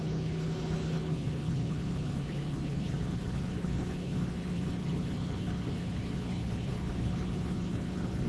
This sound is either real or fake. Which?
fake